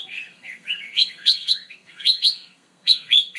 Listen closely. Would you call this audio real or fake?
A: fake